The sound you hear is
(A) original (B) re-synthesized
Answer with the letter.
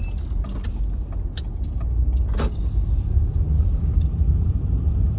A